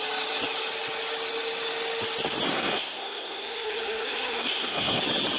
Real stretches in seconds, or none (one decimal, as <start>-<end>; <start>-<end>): 0.0-2.5; 5.0-5.4